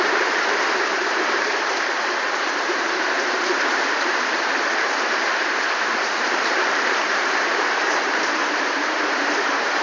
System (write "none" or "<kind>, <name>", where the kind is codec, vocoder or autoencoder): vocoder, BigVGAN v2